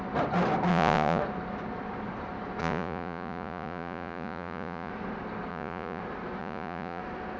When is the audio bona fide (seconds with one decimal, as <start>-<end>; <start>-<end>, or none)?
0.0-0.7; 1.2-2.6; 4.9-5.5; 6.0-6.4; 7.0-7.4